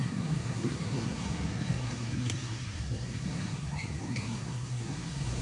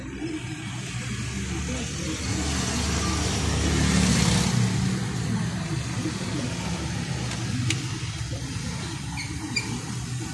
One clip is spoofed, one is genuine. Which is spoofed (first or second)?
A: first